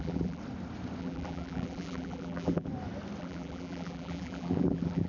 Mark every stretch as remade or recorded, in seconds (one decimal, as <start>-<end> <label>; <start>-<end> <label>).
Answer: 0.0-0.4 remade; 0.4-1.0 recorded; 1.0-2.7 remade; 2.7-3.2 recorded; 3.2-5.1 remade